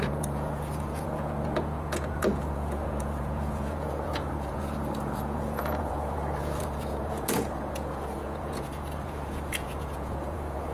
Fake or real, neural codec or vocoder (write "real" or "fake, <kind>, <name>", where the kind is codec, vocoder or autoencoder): fake, vocoder, Vocos